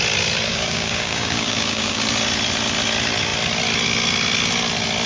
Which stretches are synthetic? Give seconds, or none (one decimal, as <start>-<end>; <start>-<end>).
0.5-2.0